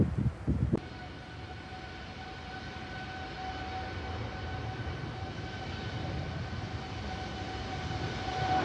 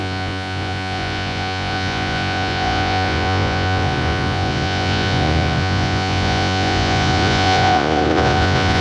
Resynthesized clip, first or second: second